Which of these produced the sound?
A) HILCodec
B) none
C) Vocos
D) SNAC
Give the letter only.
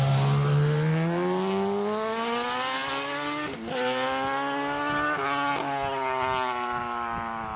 B